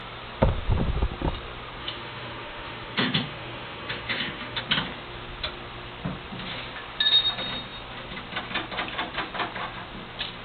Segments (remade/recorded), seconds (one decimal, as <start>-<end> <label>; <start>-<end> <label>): 0.0-1.8 recorded; 1.8-4.6 remade; 4.6-10.4 recorded